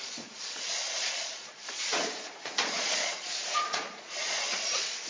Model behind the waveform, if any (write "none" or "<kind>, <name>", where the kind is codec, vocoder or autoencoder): vocoder, Vocos